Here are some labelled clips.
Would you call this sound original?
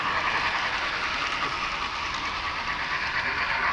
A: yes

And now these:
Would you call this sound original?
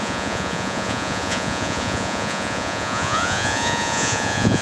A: no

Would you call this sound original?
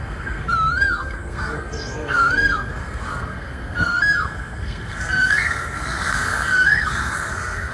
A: no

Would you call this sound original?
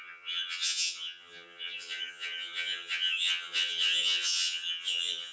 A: no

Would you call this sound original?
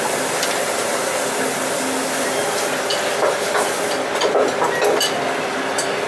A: yes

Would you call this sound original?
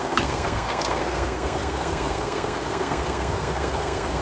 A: no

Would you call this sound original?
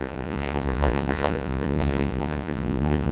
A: no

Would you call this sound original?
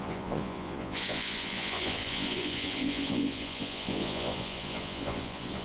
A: no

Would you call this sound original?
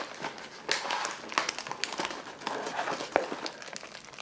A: yes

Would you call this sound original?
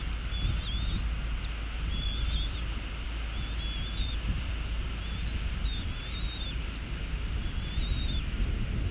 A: yes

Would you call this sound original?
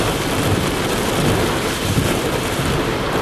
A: no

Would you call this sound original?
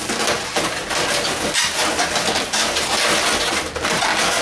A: yes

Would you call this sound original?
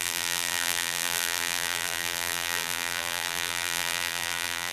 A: no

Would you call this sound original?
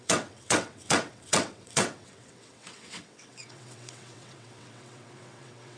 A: no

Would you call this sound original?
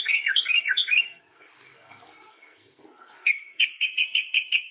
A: no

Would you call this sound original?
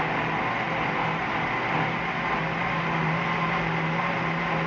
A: yes